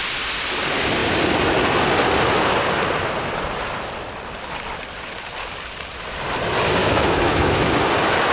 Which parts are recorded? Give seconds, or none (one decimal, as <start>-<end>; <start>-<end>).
0.0-6.8; 7.7-8.3